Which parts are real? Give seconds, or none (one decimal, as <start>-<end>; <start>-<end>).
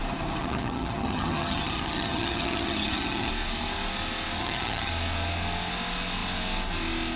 0.0-0.4; 3.3-4.4; 4.9-7.2